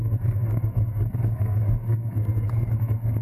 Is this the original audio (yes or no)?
no